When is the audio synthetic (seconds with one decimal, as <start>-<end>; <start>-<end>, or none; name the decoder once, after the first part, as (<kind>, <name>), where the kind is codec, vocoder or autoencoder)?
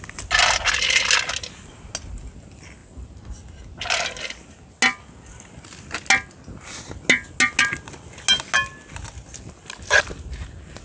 none